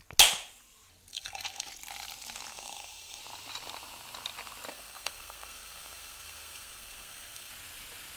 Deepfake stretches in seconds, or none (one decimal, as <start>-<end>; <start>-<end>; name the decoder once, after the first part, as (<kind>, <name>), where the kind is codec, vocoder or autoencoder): 1.1-1.7 (codec, SNAC); 2.5-3.2; 4.7-7.5